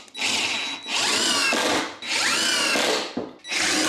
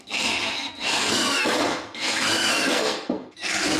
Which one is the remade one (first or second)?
second